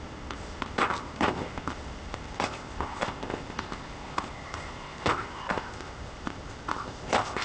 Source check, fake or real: fake